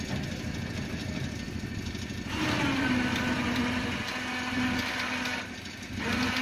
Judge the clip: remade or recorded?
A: recorded